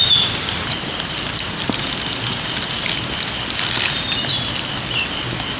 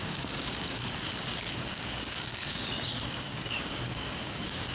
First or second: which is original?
first